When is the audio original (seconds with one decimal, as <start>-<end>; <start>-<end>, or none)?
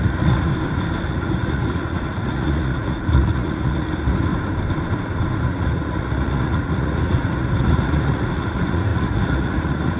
0.5-1.1; 4.3-5.4